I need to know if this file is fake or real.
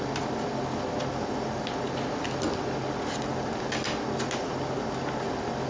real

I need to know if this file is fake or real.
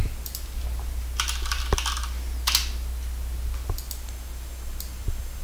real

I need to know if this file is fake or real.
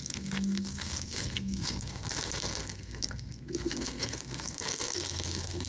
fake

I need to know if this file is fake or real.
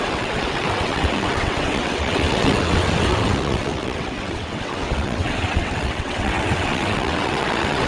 fake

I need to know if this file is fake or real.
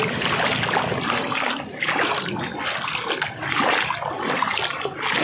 real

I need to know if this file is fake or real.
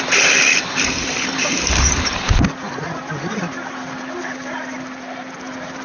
fake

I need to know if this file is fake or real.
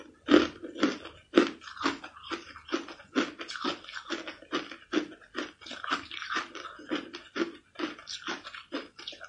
real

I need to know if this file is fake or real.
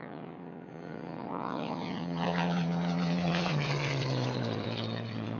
fake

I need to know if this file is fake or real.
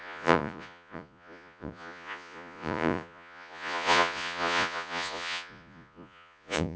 fake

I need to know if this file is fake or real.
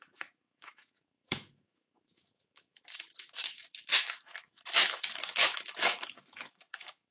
fake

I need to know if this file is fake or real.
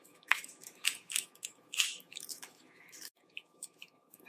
fake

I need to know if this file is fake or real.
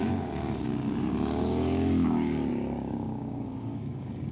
fake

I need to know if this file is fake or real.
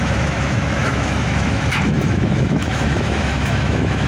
fake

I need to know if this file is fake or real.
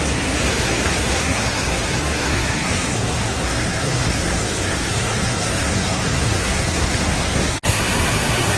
fake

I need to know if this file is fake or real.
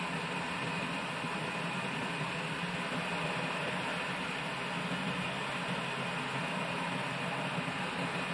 real